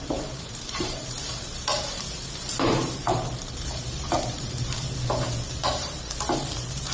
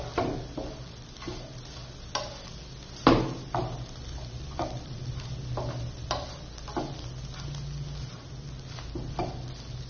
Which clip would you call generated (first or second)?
first